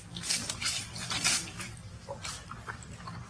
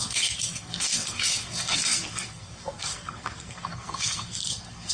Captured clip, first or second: first